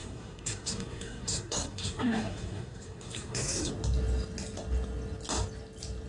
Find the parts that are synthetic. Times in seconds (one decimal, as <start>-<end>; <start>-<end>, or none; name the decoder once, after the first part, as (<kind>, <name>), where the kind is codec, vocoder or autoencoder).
0.0-3.7 (codec, SNAC)

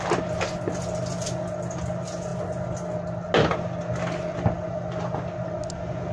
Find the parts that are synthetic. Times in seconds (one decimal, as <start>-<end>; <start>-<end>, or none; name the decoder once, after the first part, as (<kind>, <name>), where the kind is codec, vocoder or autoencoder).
none

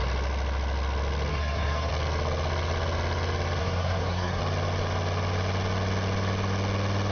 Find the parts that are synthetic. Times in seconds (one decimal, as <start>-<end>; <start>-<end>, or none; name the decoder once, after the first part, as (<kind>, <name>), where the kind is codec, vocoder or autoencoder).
1.3-1.9 (codec, SNAC); 3.6-4.4

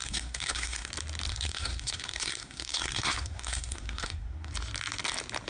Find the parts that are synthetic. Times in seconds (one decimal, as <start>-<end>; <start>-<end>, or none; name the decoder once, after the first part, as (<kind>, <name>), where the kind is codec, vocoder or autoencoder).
0.0-0.9 (codec, SNAC); 1.3-4.5